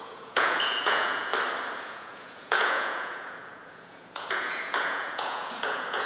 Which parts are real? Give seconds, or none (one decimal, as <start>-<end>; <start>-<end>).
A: 1.3-1.8